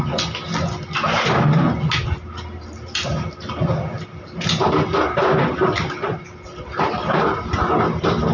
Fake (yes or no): no